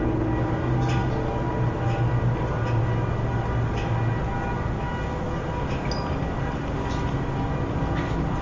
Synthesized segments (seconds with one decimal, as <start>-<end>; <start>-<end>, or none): none